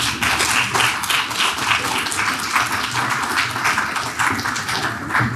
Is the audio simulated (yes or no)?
no